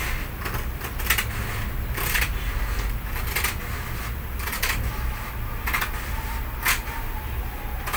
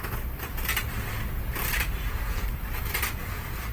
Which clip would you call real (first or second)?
first